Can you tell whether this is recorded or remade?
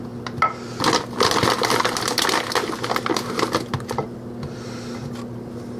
recorded